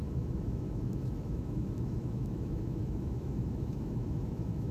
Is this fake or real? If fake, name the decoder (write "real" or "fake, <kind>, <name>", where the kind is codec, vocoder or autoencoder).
fake, autoencoder, DAC-VAE